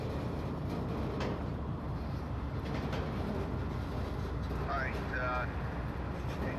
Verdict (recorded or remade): recorded